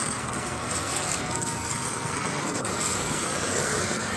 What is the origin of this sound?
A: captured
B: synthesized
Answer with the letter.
B